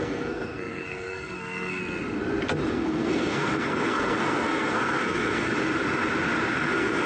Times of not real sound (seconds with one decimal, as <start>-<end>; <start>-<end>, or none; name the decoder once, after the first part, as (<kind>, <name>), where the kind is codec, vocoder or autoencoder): 0.0-1.8 (codec, SNAC); 2.7-5.5; 6.5-7.1